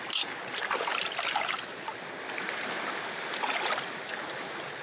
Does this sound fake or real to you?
real